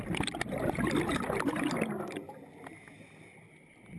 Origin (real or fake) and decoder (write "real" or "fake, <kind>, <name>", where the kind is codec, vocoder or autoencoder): real